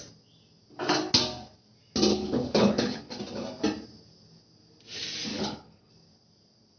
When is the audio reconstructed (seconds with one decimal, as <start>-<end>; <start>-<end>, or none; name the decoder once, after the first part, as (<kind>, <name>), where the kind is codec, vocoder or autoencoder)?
2.1-3.2 (codec, HILCodec); 5.3-5.9